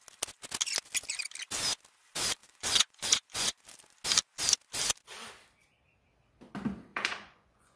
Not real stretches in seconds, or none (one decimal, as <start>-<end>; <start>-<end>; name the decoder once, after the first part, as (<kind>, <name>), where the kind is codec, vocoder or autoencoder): 2.4-3.6 (vocoder, Vocos); 6.9-7.8